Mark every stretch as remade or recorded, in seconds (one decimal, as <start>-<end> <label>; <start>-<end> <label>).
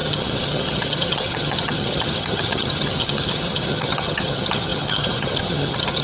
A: 0.0-6.0 remade